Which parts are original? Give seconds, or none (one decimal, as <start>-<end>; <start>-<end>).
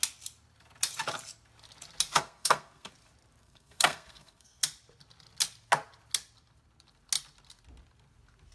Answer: 0.0-2.1; 2.9-3.4; 4.6-8.5